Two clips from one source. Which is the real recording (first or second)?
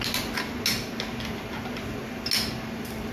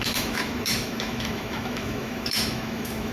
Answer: first